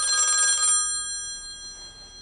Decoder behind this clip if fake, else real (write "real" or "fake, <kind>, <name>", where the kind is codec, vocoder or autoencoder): real